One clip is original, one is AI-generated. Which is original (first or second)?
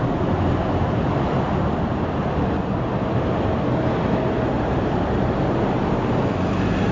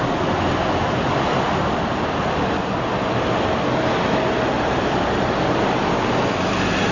second